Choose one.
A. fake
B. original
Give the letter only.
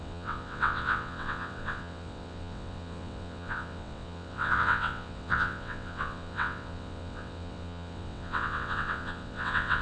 A